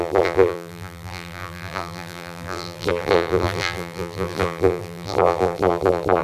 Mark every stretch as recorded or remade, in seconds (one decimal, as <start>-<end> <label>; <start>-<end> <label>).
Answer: 0.0-6.2 remade